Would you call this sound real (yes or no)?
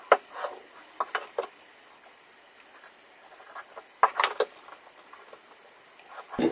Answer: yes